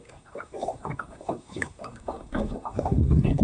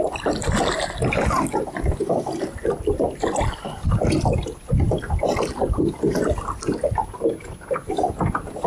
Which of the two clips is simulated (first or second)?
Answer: first